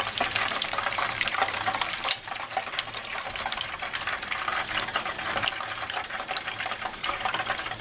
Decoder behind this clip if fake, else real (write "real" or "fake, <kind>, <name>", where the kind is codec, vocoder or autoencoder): fake, vocoder, BigVGAN v2